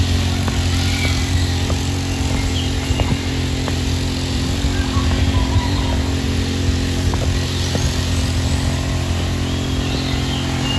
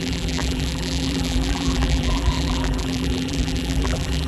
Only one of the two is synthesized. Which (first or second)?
second